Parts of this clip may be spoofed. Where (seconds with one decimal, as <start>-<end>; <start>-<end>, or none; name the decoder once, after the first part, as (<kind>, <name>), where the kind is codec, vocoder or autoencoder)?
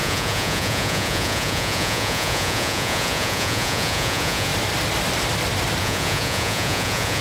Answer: 0.0-4.5 (vocoder, Vocos); 5.8-7.2